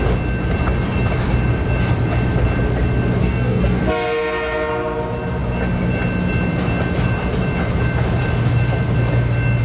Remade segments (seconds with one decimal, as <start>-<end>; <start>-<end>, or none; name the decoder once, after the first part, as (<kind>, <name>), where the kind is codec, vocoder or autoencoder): 3.2-3.8 (codec, SNAC)